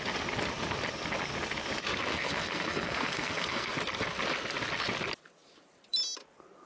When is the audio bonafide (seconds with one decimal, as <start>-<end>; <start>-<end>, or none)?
0.0-2.1; 3.7-6.7